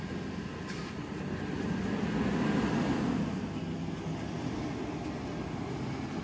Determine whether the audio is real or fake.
real